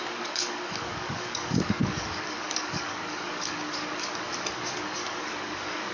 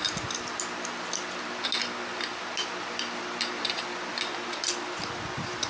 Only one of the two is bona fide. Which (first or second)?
second